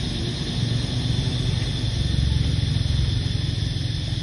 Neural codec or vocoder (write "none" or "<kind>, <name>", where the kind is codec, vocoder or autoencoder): none